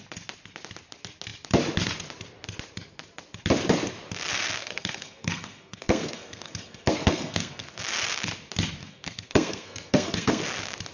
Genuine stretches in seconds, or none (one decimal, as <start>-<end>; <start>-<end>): 0.0-4.6; 7.8-8.8; 10.4-10.9